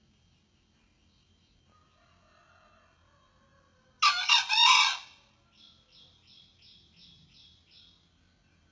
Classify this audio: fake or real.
real